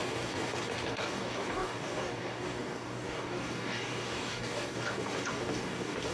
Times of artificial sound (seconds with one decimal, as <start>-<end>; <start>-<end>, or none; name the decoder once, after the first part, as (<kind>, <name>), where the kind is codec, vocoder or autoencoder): 0.0-6.1 (codec, DAC)